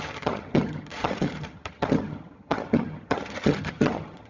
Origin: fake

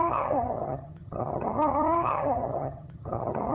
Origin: fake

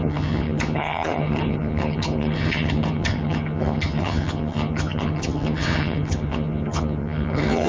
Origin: fake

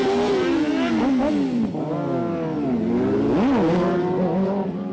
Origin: real